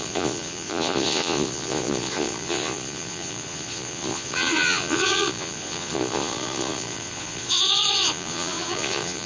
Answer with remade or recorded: remade